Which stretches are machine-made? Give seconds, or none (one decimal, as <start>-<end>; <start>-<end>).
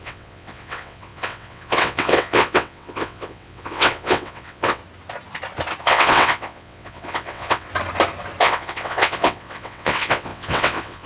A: 0.0-4.8; 5.8-7.7; 8.4-11.1